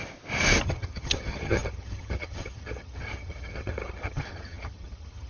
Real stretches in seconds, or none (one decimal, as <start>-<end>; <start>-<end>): 0.0-0.6